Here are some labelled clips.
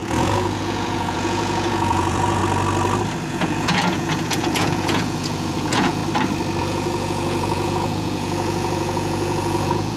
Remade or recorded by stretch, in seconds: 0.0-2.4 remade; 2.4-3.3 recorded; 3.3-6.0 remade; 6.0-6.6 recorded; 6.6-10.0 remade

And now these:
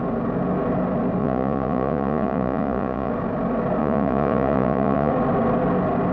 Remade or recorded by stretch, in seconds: 0.0-1.2 recorded; 1.2-3.1 remade; 3.1-3.8 recorded; 3.8-5.1 remade; 5.1-6.1 recorded

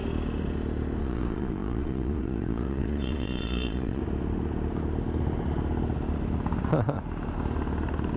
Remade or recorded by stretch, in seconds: 0.0-1.0 recorded; 1.0-4.0 remade; 4.0-8.2 recorded

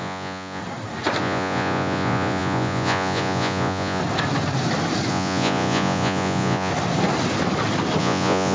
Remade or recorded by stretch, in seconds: 0.0-0.6 remade; 0.6-1.2 recorded; 1.2-4.0 remade; 4.0-5.1 recorded; 5.1-6.7 remade; 6.7-8.0 recorded; 8.0-8.5 remade

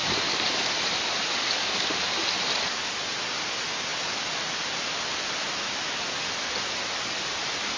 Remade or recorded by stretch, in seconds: 0.0-7.8 recorded

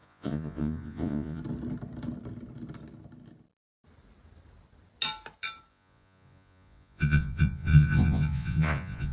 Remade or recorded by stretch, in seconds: 0.0-1.4 remade; 1.4-5.7 recorded; 5.7-9.1 remade

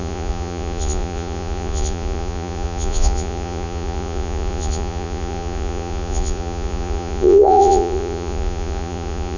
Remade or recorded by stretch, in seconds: 0.0-9.4 remade